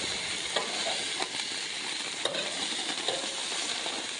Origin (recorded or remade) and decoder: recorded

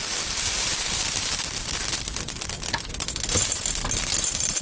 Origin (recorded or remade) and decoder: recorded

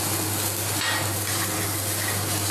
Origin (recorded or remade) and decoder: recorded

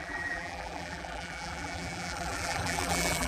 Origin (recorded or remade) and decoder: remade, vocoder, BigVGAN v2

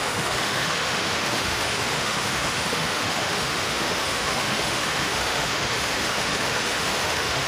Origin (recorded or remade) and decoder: remade, autoencoder, DAC-VAE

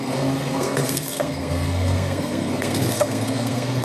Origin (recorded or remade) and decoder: remade, codec, SNAC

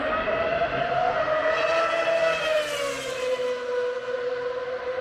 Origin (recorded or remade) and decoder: recorded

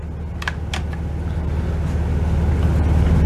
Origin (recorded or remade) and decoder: recorded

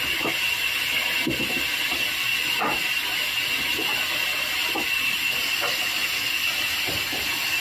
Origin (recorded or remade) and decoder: recorded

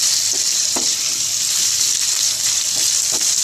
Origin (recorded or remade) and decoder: remade, vocoder, BigVGAN v2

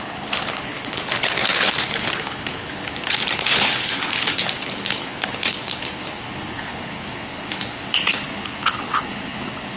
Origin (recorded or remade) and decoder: remade, codec, HILCodec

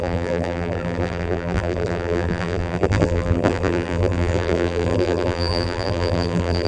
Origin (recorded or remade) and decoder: remade, vocoder, BigVGAN v2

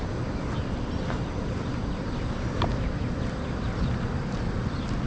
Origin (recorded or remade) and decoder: recorded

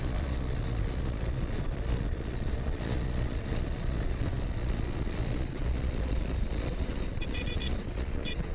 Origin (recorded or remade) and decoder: remade, vocoder, Vocos